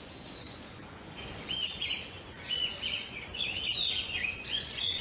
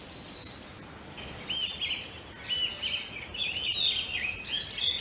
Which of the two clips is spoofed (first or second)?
first